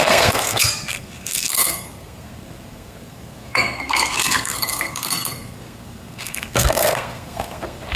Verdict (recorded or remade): remade